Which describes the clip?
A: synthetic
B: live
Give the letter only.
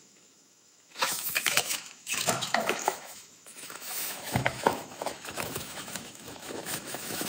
A